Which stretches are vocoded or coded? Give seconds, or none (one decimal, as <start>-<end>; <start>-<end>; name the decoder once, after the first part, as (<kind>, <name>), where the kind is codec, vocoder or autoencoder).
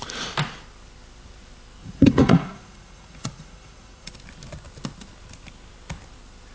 1.8-4.1 (vocoder, Vocos)